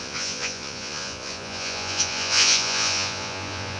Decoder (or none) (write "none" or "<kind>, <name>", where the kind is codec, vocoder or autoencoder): vocoder, Vocos